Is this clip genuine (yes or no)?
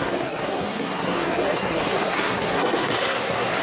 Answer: no